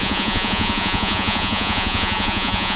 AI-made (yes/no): yes